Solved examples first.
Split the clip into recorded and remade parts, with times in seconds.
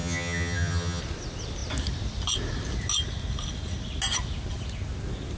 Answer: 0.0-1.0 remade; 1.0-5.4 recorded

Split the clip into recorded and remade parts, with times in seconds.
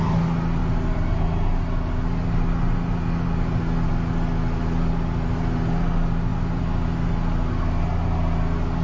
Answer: 0.0-8.8 recorded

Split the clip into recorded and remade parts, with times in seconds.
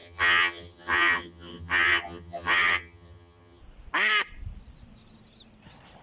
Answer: 0.0-3.6 remade; 3.6-6.0 recorded